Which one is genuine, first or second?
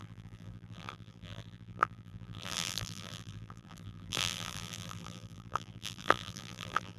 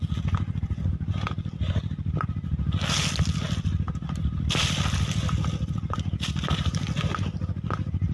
second